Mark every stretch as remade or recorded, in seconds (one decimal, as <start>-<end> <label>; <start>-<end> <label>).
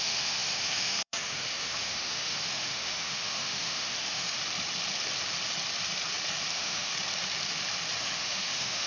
0.0-4.4 remade; 4.4-6.5 recorded; 6.5-6.9 remade; 6.9-8.0 recorded; 8.0-8.9 remade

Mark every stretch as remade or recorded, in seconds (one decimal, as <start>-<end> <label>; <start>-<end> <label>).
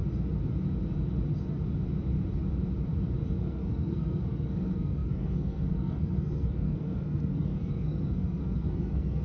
0.0-3.4 recorded; 3.4-9.2 remade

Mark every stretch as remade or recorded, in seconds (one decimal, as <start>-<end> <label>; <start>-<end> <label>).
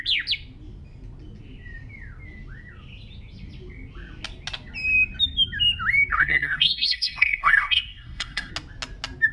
0.0-6.1 recorded; 6.1-8.5 remade; 8.5-9.3 recorded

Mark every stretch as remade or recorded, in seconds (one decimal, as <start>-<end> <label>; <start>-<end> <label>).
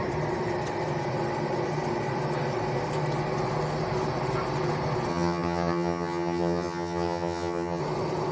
0.0-5.1 recorded; 5.1-7.8 remade; 7.8-8.3 recorded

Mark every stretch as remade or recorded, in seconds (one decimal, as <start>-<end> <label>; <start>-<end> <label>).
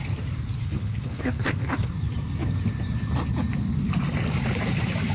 0.0-0.6 recorded; 0.6-1.9 remade; 1.9-5.1 recorded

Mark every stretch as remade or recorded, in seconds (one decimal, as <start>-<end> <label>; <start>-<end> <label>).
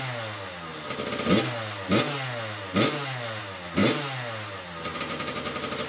0.0-5.9 recorded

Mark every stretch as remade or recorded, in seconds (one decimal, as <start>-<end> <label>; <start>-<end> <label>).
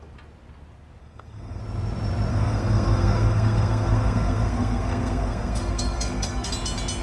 0.0-1.0 recorded; 1.0-1.6 remade; 1.6-2.3 recorded; 2.3-6.5 remade; 6.5-7.0 recorded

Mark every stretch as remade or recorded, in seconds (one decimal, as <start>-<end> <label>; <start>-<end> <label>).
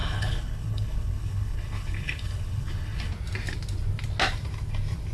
0.0-3.1 remade; 3.1-5.1 recorded